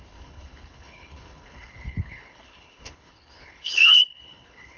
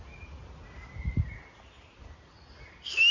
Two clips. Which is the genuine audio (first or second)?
second